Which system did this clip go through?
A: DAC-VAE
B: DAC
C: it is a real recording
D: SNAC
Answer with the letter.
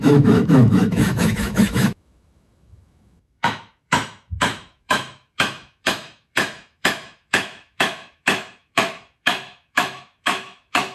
A